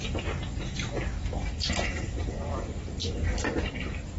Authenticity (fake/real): real